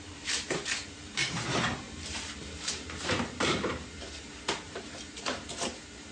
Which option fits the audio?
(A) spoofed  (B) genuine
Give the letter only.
A